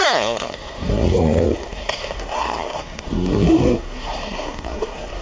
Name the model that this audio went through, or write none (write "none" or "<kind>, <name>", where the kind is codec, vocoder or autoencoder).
codec, SNAC